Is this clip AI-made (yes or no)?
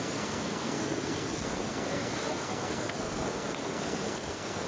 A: yes